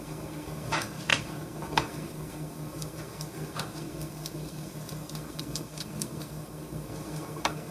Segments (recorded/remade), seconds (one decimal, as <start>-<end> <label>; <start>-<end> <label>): 0.0-7.7 remade